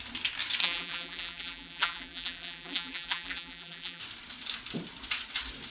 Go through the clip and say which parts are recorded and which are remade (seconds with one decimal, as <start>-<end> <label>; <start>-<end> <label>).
0.0-0.6 recorded; 0.6-4.0 remade; 4.0-5.7 recorded